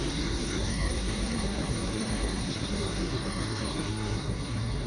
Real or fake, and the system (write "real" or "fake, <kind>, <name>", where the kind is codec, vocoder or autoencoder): fake, codec, SNAC